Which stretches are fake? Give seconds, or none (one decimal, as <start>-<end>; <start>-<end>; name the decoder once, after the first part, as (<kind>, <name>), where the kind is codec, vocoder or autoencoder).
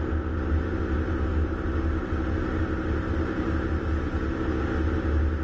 1.3-4.5 (vocoder, BigVGAN v2)